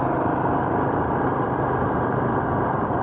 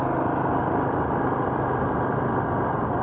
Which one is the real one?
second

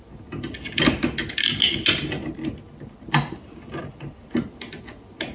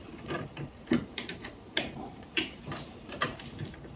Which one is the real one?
first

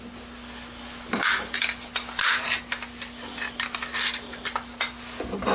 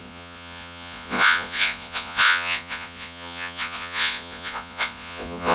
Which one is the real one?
first